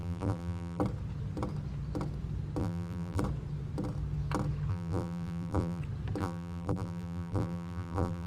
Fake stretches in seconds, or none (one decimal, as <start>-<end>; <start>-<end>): 0.0-0.8; 2.6-3.2; 4.7-5.8; 6.2-8.3